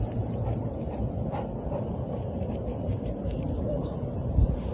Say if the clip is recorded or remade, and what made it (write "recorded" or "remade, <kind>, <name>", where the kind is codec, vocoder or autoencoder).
remade, vocoder, BigVGAN v2